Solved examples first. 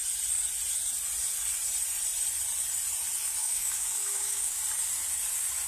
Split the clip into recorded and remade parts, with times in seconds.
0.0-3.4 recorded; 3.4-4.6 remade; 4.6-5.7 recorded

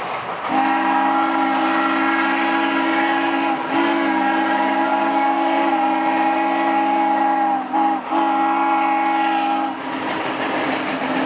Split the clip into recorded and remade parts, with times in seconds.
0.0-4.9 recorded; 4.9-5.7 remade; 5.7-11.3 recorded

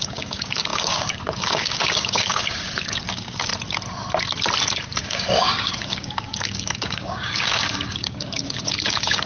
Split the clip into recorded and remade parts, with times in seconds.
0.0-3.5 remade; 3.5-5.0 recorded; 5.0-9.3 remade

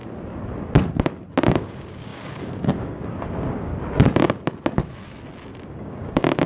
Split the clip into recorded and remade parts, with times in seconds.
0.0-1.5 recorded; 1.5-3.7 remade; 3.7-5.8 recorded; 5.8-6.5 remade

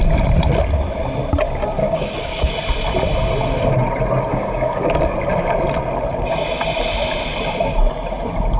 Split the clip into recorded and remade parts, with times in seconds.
0.0-1.8 recorded; 1.8-2.5 remade; 2.5-4.3 recorded; 4.3-4.9 remade; 4.9-8.6 recorded

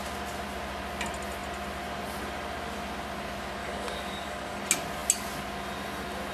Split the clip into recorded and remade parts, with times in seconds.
0.0-3.6 recorded; 3.6-4.6 remade; 4.6-6.3 recorded

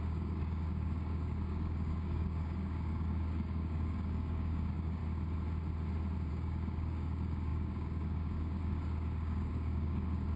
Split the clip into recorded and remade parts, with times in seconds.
0.0-5.0 remade; 5.0-6.3 recorded; 6.3-10.4 remade